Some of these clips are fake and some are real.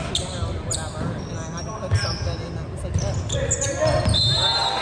real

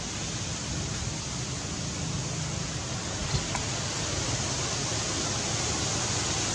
real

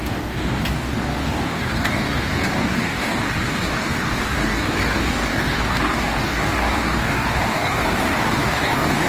fake